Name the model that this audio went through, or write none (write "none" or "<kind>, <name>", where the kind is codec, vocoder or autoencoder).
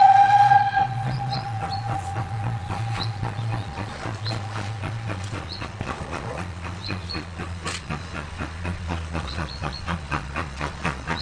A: vocoder, Vocos